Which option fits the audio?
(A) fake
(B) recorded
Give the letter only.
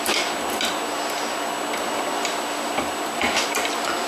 B